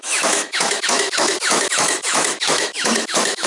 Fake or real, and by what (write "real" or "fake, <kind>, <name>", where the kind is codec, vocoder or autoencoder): fake, autoencoder, DAC-VAE